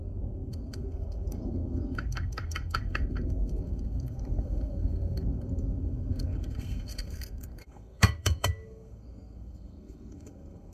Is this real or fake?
fake